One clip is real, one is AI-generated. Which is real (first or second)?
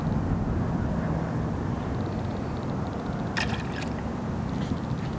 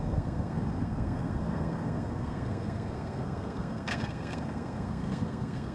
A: first